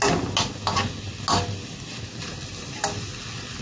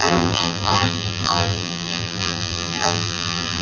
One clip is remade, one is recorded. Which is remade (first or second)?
second